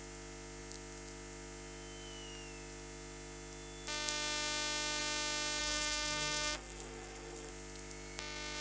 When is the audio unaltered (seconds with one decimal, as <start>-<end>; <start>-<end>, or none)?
0.0-5.6; 7.5-8.6